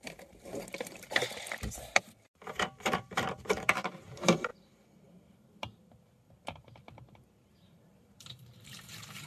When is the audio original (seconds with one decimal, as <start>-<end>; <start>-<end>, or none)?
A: 1.3-2.8; 4.5-7.5